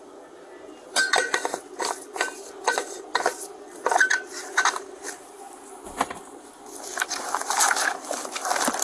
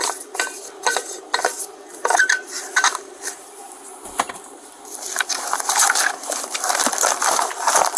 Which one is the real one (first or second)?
first